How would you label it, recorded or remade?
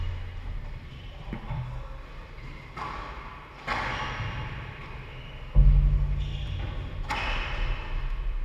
recorded